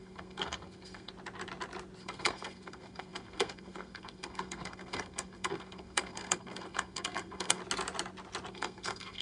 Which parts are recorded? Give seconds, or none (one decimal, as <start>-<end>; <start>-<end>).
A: 1.1-2.0; 7.6-8.5